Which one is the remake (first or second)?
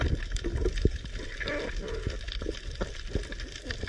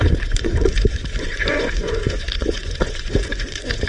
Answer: second